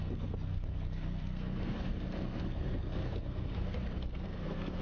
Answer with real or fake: fake